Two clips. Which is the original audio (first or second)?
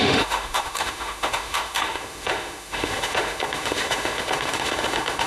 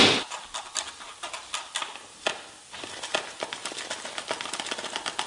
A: second